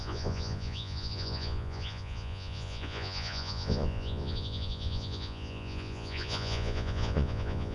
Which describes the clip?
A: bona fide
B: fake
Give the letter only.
B